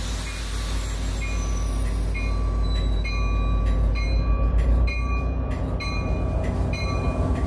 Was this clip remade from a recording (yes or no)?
no